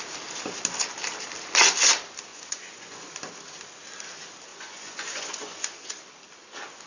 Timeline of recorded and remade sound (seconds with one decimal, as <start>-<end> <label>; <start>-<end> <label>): 0.0-2.3 recorded; 2.3-3.1 remade; 3.1-4.5 recorded; 4.5-5.9 remade; 5.9-6.9 recorded